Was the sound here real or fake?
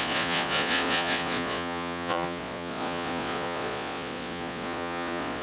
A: fake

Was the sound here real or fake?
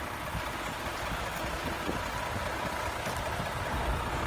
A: real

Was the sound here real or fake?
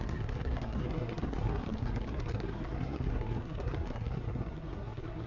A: fake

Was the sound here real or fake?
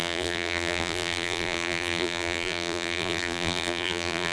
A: fake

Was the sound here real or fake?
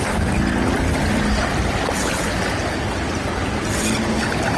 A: real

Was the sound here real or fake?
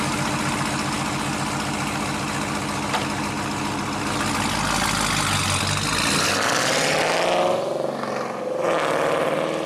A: real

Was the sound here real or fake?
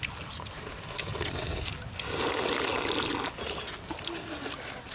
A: real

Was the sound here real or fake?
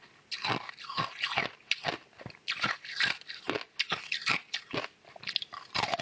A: real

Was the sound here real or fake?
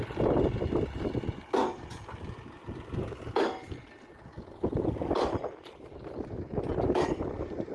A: real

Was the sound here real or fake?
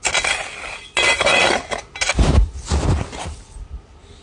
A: real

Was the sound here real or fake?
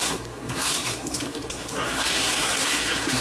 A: fake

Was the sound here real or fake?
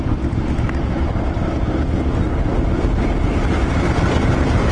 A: real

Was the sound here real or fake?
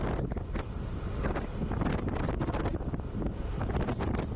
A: real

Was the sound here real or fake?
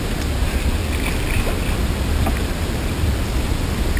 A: real